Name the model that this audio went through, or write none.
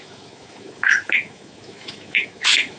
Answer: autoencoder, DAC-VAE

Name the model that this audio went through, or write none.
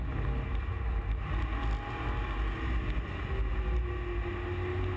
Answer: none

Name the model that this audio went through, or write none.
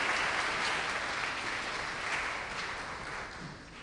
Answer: none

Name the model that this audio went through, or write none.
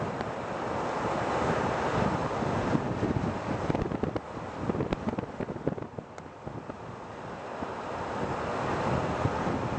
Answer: none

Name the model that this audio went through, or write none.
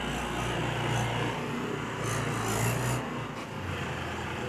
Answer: none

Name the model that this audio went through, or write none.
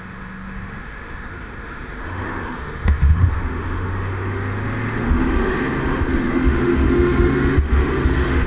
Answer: autoencoder, DAC-VAE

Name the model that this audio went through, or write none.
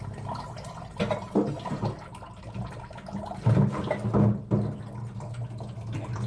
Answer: none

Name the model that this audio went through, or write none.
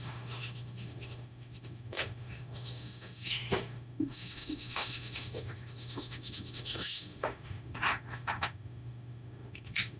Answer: autoencoder, DAC-VAE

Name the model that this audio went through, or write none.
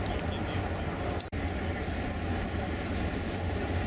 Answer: none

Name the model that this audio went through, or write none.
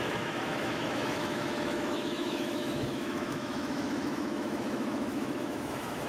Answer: autoencoder, DAC-VAE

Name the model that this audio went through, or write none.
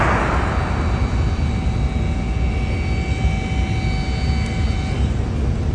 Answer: none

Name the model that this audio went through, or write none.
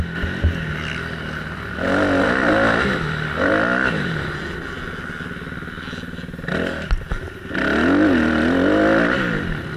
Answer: none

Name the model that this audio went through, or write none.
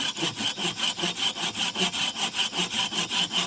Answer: none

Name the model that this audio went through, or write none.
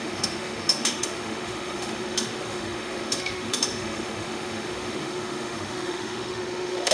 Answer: autoencoder, DAC-VAE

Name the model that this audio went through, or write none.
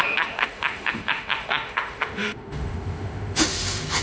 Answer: autoencoder, DAC-VAE